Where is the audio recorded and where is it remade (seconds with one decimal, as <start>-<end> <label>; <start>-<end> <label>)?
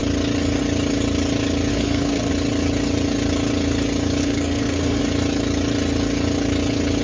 0.0-1.7 recorded; 1.7-2.3 remade; 2.3-4.2 recorded; 4.2-5.0 remade; 5.0-7.0 recorded